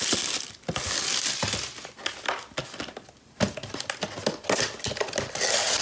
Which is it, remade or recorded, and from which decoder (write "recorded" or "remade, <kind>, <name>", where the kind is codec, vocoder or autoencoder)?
recorded